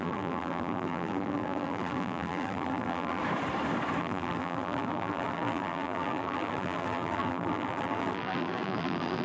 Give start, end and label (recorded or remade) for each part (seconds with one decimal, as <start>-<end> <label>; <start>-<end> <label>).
0.0-3.2 remade; 3.2-4.0 recorded; 4.0-9.2 remade

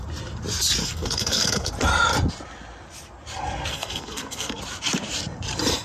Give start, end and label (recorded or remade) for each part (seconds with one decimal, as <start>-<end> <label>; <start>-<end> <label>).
0.0-0.8 recorded; 0.8-1.7 remade; 1.7-3.7 recorded; 3.7-4.6 remade; 4.6-5.8 recorded

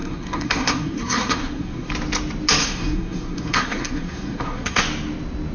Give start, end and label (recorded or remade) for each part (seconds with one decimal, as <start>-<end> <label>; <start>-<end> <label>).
0.0-1.9 remade; 1.9-2.6 recorded; 2.6-4.8 remade; 4.8-5.5 recorded

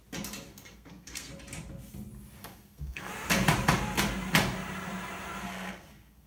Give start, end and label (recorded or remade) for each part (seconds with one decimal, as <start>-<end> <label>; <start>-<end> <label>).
0.0-0.5 recorded; 0.5-1.3 remade; 1.3-2.4 recorded; 2.4-3.1 remade; 3.1-5.4 recorded; 5.4-6.3 remade

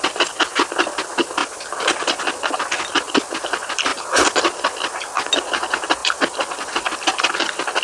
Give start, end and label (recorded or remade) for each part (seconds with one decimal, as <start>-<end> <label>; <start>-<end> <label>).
0.0-1.4 recorded; 1.4-2.5 remade; 2.5-3.9 recorded; 3.9-4.4 remade; 4.4-6.0 recorded; 6.0-7.2 remade; 7.2-7.8 recorded